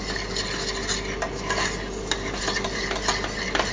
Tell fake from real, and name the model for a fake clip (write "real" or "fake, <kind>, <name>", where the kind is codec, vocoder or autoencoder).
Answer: real